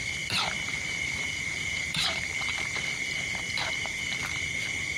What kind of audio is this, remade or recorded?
remade